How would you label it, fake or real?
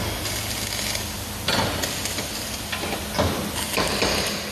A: real